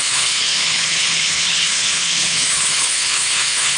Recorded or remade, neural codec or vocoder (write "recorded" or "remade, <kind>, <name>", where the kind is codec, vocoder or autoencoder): remade, codec, HILCodec